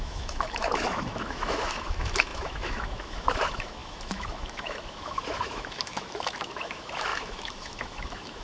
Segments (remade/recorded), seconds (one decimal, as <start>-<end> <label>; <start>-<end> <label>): 0.0-8.4 remade